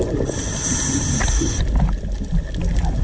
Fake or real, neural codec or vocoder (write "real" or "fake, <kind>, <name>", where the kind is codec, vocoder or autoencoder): real